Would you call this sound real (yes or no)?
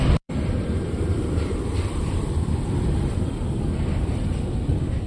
no